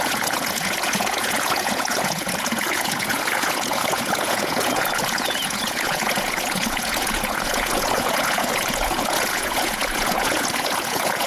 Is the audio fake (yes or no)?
yes